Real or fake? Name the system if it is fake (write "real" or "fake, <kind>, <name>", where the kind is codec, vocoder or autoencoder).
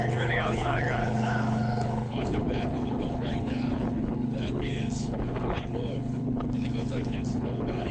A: fake, codec, HILCodec